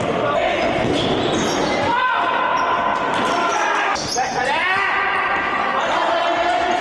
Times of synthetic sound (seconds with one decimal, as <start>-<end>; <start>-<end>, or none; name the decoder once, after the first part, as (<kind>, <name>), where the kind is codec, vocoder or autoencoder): none